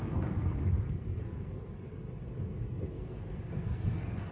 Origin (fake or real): fake